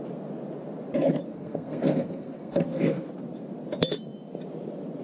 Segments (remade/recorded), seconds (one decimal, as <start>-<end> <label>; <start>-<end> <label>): 0.0-1.3 recorded; 1.3-3.1 remade; 3.1-5.0 recorded